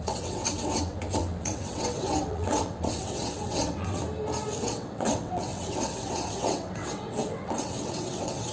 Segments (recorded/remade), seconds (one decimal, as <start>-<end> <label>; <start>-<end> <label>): 0.0-4.0 remade; 4.0-4.6 recorded; 4.6-8.5 remade